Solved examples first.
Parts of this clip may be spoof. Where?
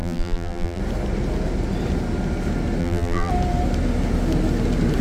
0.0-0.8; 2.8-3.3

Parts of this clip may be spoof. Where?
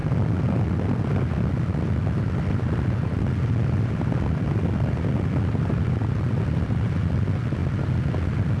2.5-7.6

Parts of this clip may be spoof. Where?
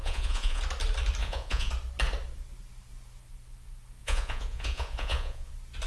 0.0-0.6; 1.2-1.7; 4.0-5.5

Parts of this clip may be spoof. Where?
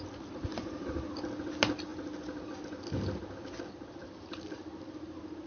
0.5-1.1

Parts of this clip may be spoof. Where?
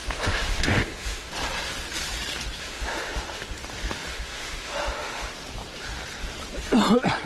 0.0-1.3; 2.6-3.5; 4.1-5.3